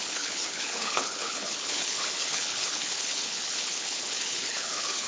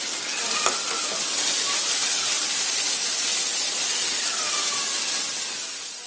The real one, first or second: second